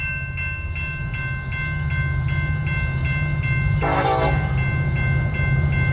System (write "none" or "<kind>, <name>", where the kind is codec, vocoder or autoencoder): none